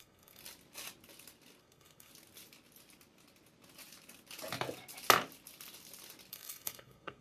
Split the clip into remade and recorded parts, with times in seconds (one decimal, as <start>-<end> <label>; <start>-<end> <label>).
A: 0.0-0.4 remade; 0.4-1.6 recorded; 1.6-2.1 remade; 2.1-6.3 recorded; 6.3-7.2 remade